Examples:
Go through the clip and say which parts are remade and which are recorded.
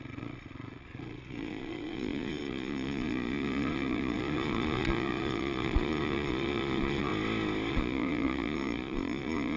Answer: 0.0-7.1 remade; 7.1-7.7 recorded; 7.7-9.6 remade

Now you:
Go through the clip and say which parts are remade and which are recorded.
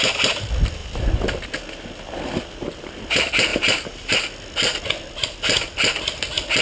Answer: 0.0-3.5 recorded; 3.5-4.1 remade; 4.1-6.6 recorded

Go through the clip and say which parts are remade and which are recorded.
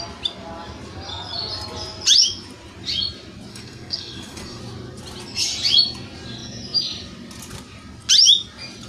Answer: 0.0-3.5 recorded; 3.5-4.6 remade; 4.6-8.9 recorded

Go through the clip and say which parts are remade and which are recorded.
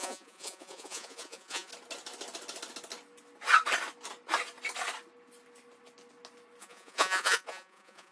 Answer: 0.0-1.7 remade; 1.7-6.6 recorded; 6.6-8.1 remade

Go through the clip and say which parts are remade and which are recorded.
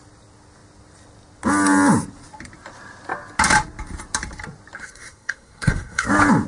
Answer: 0.0-4.8 recorded; 4.8-6.1 remade; 6.1-6.5 recorded